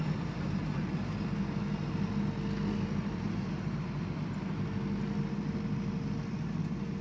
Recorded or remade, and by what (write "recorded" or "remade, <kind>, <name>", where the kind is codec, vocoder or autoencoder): recorded